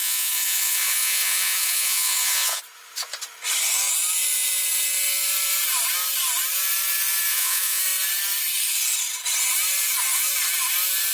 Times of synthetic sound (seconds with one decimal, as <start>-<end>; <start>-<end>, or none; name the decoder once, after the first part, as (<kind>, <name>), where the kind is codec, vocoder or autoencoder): 0.0-2.6 (vocoder, Vocos); 7.3-7.8